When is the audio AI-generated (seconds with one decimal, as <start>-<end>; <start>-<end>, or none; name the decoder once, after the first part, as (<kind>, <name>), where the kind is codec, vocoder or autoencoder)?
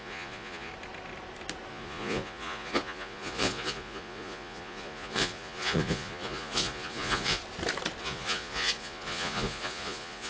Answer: 0.0-0.7 (vocoder, Vocos); 1.7-7.4; 8.0-10.3